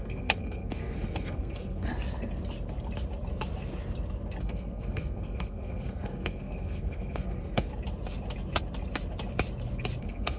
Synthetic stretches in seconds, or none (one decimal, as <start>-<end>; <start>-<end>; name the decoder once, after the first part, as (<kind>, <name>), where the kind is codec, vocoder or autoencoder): 0.0-1.9 (codec, SNAC); 4.4-7.7; 10.0-10.4